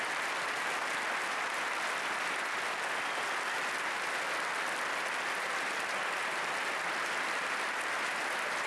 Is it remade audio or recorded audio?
recorded